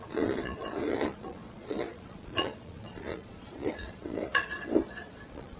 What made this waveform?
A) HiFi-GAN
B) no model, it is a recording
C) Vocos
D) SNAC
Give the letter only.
C